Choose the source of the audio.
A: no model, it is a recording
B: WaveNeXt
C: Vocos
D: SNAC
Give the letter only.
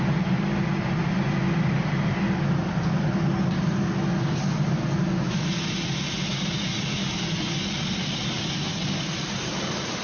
A